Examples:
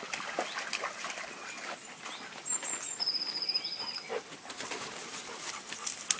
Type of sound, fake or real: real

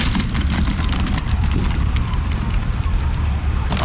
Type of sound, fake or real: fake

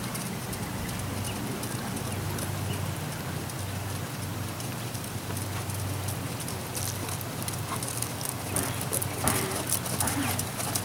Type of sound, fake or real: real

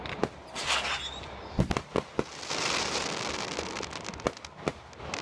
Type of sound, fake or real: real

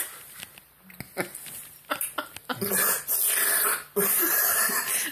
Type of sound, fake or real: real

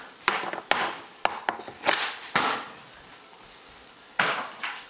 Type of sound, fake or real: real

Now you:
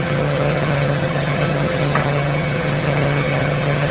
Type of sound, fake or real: fake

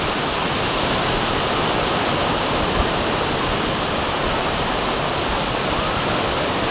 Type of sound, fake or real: real